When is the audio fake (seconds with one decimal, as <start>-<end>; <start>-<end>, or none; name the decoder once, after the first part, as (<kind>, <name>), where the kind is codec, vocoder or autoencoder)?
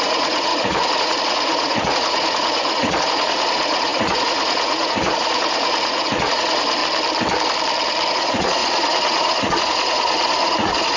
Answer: 0.0-6.8 (vocoder, Vocos); 8.1-11.0